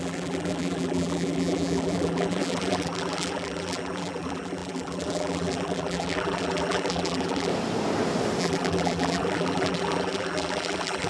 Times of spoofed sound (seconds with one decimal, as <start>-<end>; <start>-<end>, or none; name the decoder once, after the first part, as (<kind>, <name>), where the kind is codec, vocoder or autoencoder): 0.0-7.5 (vocoder, BigVGAN v2); 8.4-11.1